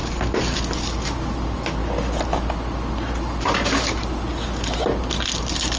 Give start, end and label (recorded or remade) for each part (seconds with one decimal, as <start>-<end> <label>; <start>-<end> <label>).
0.0-5.8 recorded